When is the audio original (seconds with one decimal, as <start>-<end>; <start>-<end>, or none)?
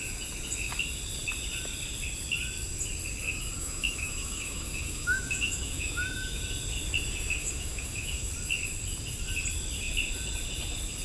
0.0-3.6; 6.4-7.4; 8.3-11.0